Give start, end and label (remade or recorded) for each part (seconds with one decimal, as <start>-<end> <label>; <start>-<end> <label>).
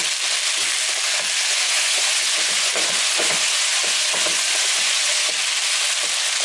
0.0-1.5 recorded; 1.5-5.3 remade; 5.3-6.4 recorded